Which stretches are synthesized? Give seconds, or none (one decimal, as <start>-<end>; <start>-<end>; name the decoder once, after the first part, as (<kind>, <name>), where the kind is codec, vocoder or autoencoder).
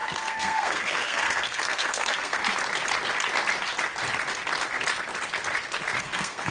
0.0-2.4 (codec, SNAC); 6.0-6.5